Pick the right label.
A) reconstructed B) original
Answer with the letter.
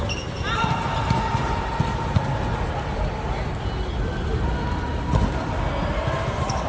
B